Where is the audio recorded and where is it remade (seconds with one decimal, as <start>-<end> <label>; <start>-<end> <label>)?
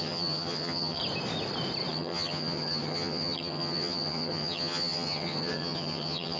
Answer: 0.0-1.0 remade; 1.0-1.9 recorded; 1.9-6.4 remade